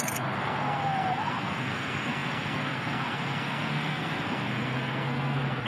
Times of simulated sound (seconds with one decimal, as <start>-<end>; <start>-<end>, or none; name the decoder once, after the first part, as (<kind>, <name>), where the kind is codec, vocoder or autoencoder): 0.0-5.7 (codec, SNAC)